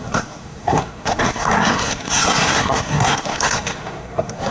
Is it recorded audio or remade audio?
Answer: remade